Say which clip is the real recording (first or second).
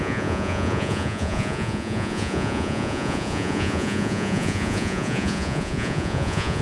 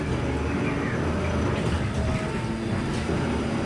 second